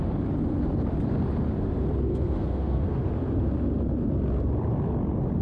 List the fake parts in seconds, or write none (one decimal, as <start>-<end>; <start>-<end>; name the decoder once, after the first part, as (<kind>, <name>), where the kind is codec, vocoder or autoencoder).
2.1-3.1 (codec, SNAC)